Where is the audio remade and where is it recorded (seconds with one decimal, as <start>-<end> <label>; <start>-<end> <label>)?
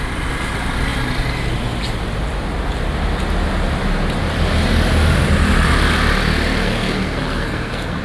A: 0.0-6.6 recorded; 6.6-8.0 remade